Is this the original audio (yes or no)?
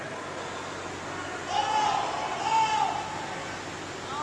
yes